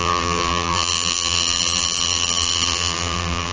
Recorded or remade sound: remade